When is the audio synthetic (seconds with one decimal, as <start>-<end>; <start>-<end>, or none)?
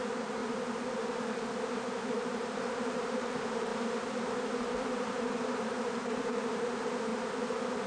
0.0-0.4; 2.1-3.7; 4.5-7.1